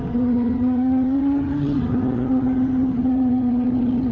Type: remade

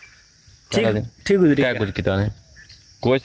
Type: recorded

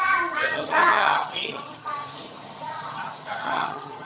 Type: remade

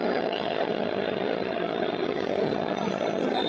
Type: remade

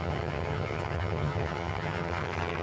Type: remade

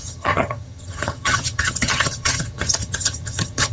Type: remade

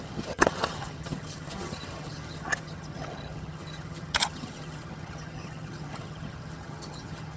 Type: remade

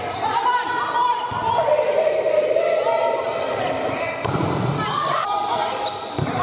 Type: recorded